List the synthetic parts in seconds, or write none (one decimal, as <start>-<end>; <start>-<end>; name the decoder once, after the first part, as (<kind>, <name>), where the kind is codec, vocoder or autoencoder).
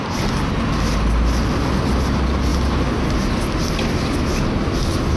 none